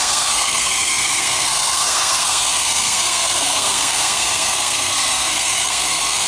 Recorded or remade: remade